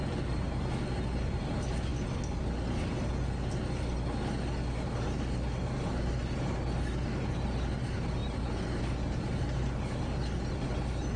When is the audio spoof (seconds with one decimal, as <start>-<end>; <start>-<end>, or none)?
8.2-8.8